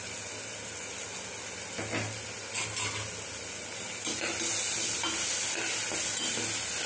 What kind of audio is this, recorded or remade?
recorded